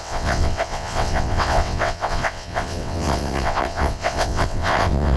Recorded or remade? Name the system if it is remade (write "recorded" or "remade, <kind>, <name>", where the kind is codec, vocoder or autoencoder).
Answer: remade, vocoder, WaveNeXt